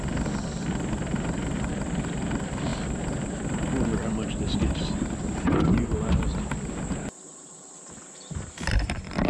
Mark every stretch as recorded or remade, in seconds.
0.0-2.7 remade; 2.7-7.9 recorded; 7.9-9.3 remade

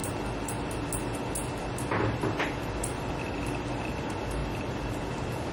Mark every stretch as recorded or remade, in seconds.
0.0-5.5 recorded

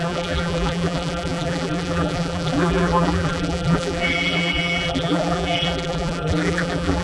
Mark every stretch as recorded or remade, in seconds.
0.0-7.0 remade

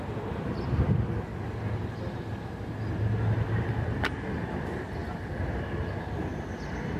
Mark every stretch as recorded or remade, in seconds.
0.0-7.0 recorded

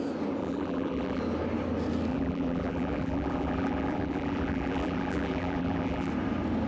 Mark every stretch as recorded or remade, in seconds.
0.0-0.4 recorded; 0.4-1.2 remade; 1.2-2.1 recorded; 2.1-6.1 remade; 6.1-6.7 recorded

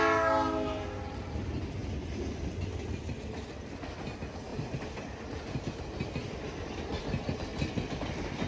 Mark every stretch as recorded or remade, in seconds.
0.0-4.5 recorded; 4.5-5.6 remade; 5.6-6.2 recorded; 6.2-7.0 remade; 7.0-8.5 recorded